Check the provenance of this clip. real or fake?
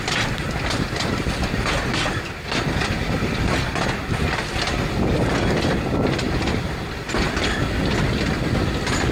real